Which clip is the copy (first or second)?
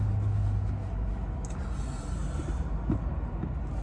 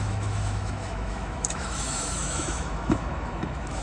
second